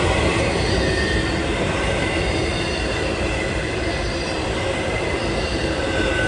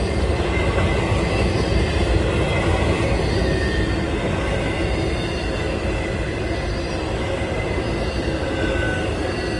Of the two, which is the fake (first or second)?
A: first